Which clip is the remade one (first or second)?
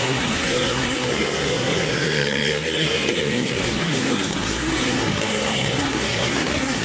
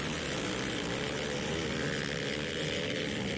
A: first